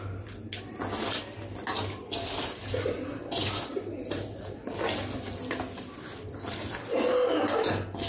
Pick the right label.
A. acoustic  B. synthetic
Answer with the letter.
A